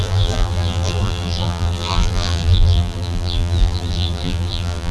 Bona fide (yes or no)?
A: no